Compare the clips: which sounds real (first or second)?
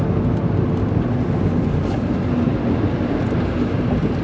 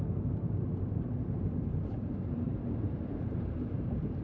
first